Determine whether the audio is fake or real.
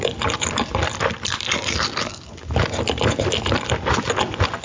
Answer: real